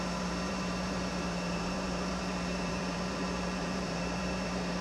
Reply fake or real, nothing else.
fake